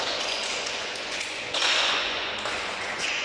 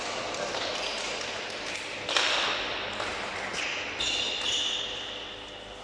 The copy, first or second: first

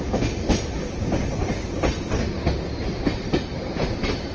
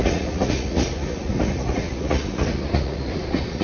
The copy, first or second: second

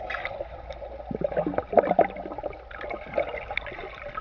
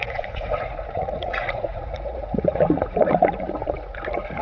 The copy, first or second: second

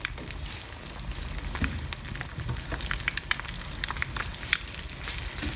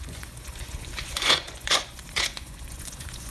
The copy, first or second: second